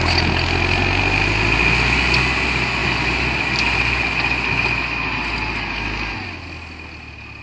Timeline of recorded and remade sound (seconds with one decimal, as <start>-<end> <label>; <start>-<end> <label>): 0.0-7.4 recorded